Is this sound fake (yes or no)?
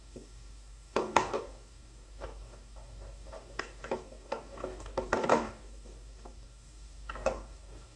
yes